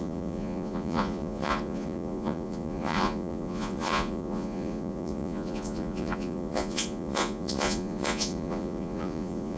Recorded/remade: remade